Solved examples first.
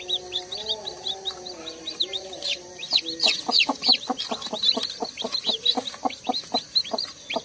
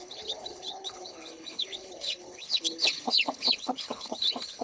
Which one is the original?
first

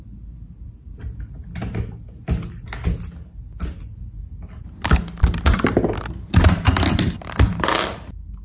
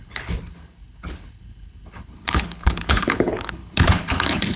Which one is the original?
first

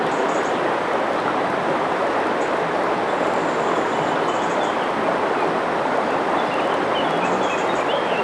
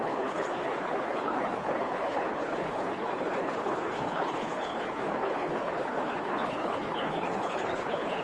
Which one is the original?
first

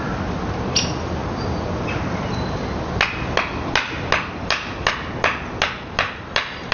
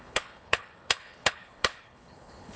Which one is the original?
first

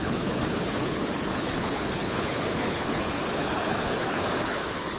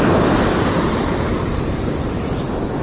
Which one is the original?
second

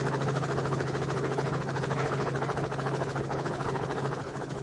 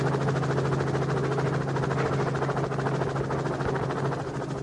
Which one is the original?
second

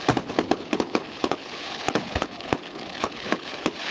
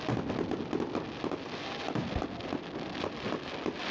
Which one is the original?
second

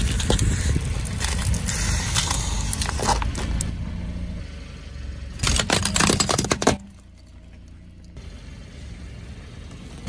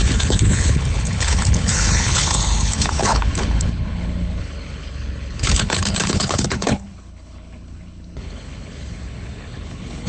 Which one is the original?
first